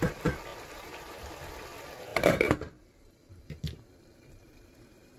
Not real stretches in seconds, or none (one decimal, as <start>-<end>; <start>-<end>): 0.5-1.3; 2.1-5.2